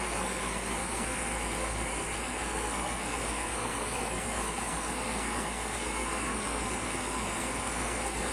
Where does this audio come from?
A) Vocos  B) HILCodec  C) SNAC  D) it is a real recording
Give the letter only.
C